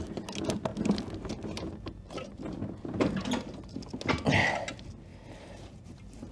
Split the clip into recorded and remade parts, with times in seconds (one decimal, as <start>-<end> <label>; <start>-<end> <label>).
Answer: 0.0-5.1 recorded; 5.1-6.3 remade